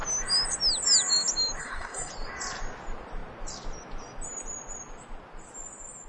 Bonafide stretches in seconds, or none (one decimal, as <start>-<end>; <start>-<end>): 0.0-1.6; 2.1-6.1